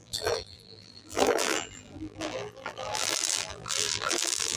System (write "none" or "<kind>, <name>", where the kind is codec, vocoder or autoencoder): vocoder, BigVGAN v2